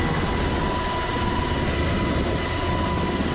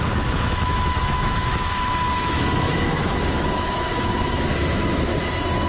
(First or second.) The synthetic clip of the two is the second